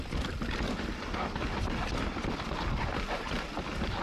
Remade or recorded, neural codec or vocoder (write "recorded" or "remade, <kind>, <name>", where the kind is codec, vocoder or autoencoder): recorded